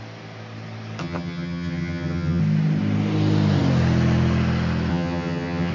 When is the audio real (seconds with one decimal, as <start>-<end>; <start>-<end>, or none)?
0.0-1.0; 2.4-4.9